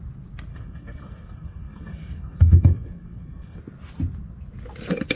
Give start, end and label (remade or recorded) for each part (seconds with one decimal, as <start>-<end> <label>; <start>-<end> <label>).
0.0-0.5 recorded; 0.5-3.6 remade; 3.6-5.2 recorded